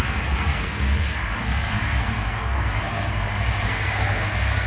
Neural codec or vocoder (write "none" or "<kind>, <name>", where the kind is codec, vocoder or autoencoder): codec, SNAC